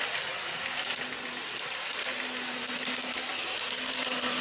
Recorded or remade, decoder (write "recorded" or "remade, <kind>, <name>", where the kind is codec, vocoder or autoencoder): recorded